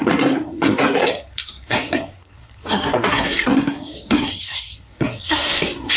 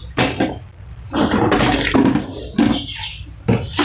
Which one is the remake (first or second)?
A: first